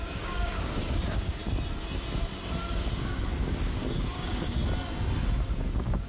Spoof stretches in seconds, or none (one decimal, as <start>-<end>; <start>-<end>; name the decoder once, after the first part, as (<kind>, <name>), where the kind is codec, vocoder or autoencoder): 0.0-1.4 (codec, DAC); 2.7-4.6; 5.5-6.1